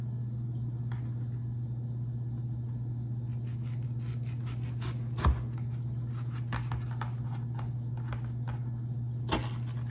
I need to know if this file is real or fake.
real